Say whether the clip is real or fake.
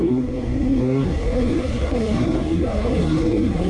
fake